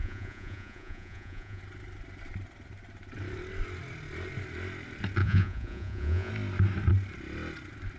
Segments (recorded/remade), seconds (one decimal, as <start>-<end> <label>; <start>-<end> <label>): 0.0-1.6 remade; 1.6-5.2 recorded; 5.2-6.3 remade; 6.3-8.0 recorded